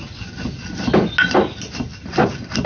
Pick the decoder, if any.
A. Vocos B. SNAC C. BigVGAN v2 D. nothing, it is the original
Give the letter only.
D